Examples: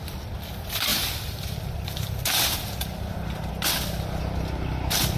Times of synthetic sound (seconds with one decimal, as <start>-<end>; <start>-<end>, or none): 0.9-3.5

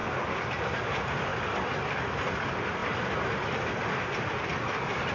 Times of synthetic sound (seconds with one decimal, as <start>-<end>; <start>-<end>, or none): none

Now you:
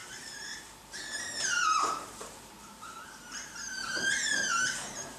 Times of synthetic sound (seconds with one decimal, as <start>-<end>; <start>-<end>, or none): 0.0-5.2

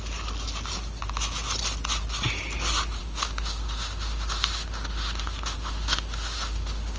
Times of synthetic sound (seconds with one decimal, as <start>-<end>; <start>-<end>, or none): 3.0-7.0

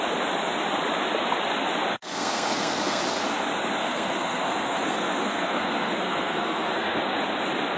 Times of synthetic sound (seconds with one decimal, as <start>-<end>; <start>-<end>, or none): 1.9-3.0; 3.8-7.0

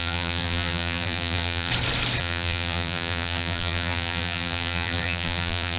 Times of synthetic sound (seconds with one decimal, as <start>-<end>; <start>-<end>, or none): 0.0-1.7; 2.2-5.8